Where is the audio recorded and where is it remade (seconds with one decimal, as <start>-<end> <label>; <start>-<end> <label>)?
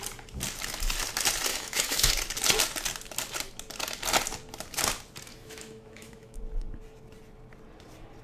0.0-1.5 recorded; 1.5-2.1 remade; 2.1-5.3 recorded; 5.3-6.4 remade; 6.4-8.2 recorded